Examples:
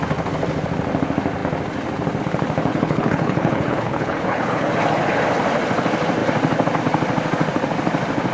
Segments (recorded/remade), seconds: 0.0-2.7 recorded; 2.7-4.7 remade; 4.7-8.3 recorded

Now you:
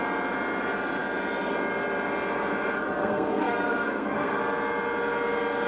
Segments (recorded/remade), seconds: 0.0-3.0 recorded; 3.0-4.4 remade; 4.4-5.7 recorded

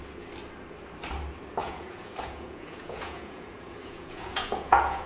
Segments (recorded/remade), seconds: 0.0-1.6 recorded; 1.6-5.1 remade

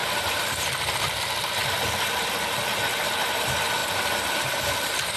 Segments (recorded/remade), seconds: 0.0-1.6 recorded; 1.6-2.6 remade; 2.6-5.2 recorded

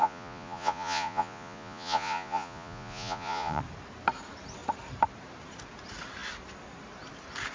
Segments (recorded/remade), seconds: 0.0-3.6 remade; 3.6-7.5 recorded

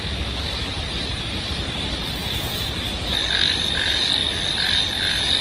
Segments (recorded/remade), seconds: 0.0-5.4 recorded